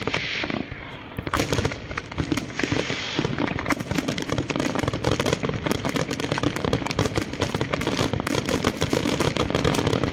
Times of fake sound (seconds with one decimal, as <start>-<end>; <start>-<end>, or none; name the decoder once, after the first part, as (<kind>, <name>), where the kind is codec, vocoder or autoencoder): 8.9-9.4 (autoencoder, DAC-VAE)